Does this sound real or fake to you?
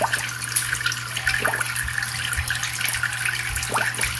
real